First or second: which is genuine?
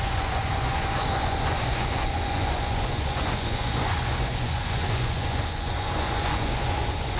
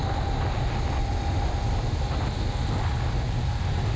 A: second